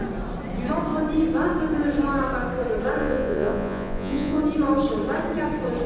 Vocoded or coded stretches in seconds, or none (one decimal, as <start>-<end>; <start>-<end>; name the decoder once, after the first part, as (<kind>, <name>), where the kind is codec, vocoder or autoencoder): 3.0-4.4 (vocoder, Vocos)

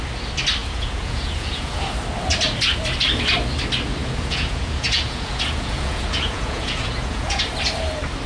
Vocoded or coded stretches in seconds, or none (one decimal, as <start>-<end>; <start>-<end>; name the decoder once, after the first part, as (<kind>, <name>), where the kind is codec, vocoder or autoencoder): 0.6-1.8 (vocoder, Vocos); 4.0-7.4

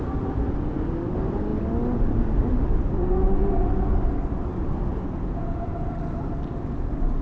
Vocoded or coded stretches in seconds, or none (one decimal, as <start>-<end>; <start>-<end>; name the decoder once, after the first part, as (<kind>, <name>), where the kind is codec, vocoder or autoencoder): 4.9-5.7 (vocoder, Vocos)

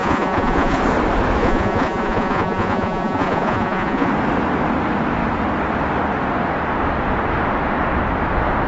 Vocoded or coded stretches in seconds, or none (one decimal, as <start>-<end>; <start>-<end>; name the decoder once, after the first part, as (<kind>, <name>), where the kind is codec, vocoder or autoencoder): 0.0-0.8 (vocoder, Vocos); 1.4-4.1

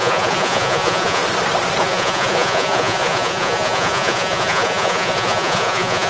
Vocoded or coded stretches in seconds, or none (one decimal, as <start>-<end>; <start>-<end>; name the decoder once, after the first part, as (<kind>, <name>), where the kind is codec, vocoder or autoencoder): 0.0-1.2 (vocoder, Vocos); 1.8-6.1